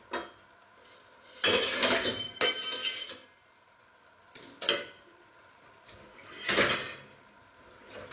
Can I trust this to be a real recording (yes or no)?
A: yes